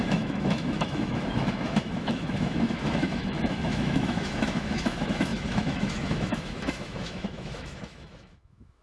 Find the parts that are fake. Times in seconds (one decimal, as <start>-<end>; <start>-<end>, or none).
0.0-8.8